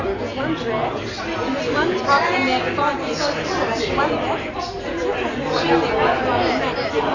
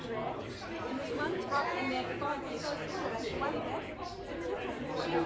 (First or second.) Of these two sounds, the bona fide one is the first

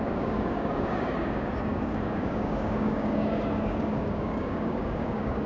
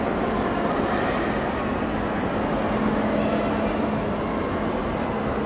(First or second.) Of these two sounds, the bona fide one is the second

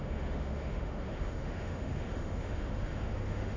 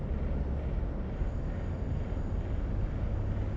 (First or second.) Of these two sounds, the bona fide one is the second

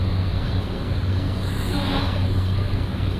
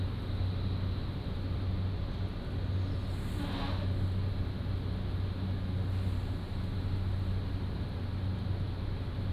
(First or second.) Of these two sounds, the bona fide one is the second